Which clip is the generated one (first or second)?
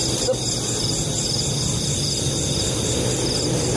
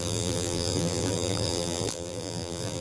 second